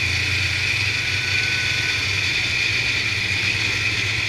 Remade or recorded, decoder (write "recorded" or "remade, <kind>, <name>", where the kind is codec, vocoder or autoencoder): recorded